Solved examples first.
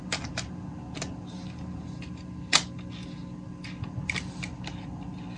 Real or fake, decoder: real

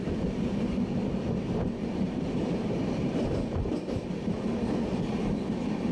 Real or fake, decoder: fake, vocoder, BigVGAN v2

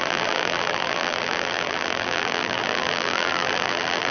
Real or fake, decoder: fake, vocoder, BigVGAN v2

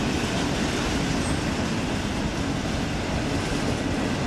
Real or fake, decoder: real